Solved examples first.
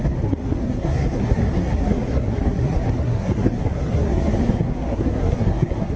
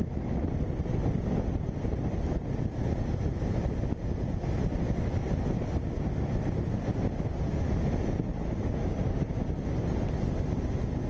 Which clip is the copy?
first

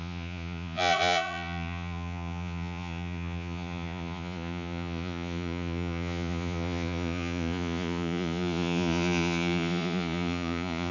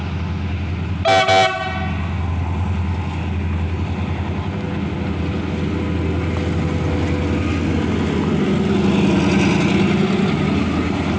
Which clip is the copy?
first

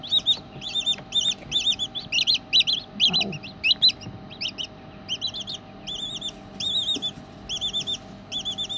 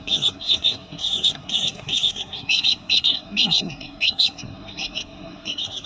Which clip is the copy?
second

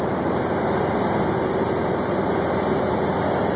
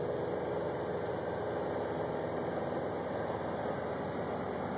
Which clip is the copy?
first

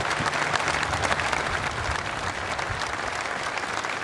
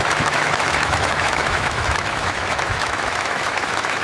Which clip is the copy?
second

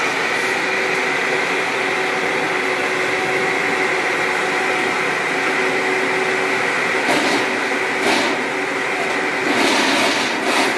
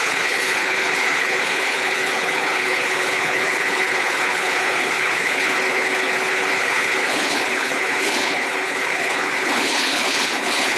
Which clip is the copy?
second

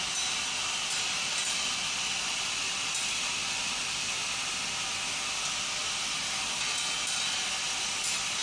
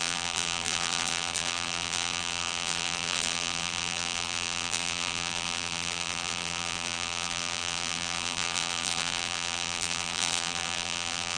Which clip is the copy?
second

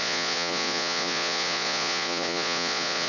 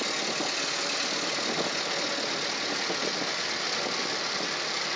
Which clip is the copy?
first